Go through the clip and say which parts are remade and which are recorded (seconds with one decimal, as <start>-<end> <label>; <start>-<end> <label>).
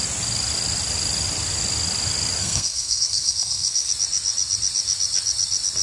0.0-2.4 recorded; 2.4-3.9 remade; 3.9-5.8 recorded